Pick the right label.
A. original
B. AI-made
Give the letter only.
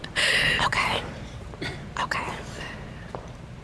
B